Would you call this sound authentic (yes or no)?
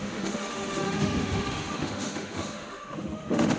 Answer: no